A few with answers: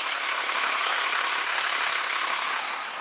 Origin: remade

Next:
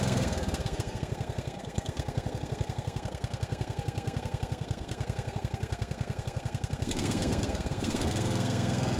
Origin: remade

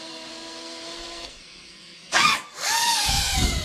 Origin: remade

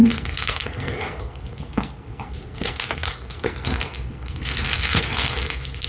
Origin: remade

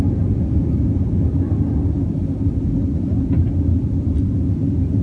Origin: recorded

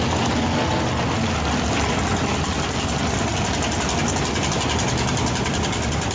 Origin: recorded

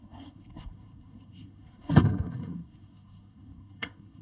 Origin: remade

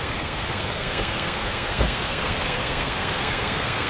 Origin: remade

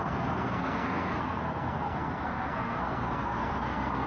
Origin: remade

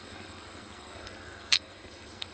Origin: remade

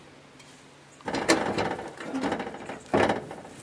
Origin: recorded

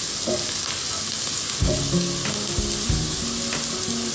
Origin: recorded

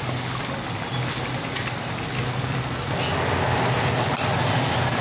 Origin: recorded